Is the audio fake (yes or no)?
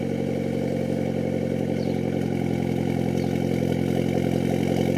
no